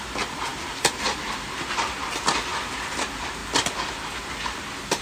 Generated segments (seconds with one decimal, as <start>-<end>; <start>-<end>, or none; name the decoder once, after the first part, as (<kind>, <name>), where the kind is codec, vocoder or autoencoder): 0.5-1.2 (vocoder, BigVGAN v2); 2.5-3.0